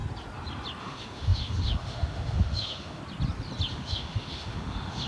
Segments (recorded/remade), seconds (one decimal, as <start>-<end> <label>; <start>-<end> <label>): 0.0-0.8 recorded; 0.8-3.0 remade; 3.0-3.7 recorded; 3.7-5.1 remade